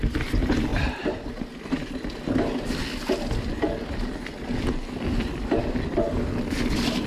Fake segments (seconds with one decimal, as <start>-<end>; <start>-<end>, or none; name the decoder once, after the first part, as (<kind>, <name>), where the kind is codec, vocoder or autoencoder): none

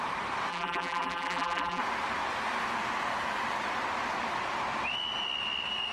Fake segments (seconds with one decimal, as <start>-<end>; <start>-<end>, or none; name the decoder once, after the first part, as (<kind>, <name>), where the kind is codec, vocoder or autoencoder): 0.5-1.8 (vocoder, BigVGAN v2)

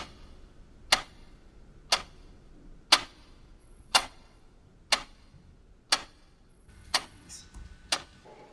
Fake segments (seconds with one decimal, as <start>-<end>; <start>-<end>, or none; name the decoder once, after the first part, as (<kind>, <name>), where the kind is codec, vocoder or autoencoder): 3.6-4.4 (vocoder, WaveNeXt); 6.5-7.4

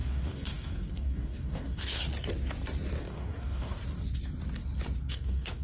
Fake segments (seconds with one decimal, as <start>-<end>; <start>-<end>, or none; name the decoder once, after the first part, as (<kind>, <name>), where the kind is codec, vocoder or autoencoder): 0.0-2.0 (codec, DAC); 3.0-3.8; 5.1-5.6

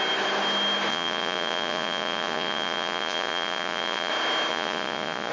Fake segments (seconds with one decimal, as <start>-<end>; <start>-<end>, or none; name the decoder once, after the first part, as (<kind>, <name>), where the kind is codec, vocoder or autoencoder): 0.9-4.1 (vocoder, Vocos); 4.5-5.3

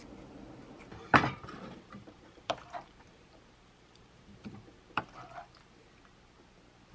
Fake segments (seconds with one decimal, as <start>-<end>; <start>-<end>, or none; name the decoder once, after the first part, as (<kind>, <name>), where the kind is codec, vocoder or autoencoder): 0.9-5.0 (vocoder, BigVGAN v2)

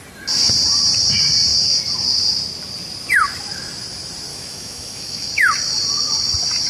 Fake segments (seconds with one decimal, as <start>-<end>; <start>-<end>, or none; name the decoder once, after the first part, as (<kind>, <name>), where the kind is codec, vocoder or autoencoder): 4.3-5.3 (autoencoder, DAC-VAE)

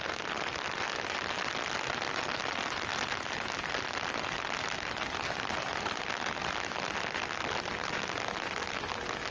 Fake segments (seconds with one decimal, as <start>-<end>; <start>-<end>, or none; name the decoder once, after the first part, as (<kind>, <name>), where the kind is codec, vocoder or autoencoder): none